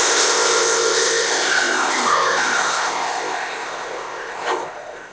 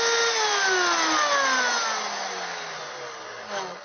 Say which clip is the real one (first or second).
second